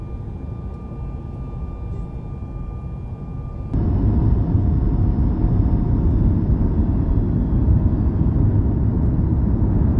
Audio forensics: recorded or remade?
recorded